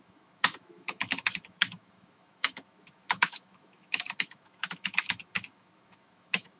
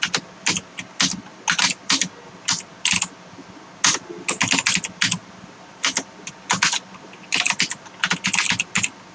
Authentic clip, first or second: second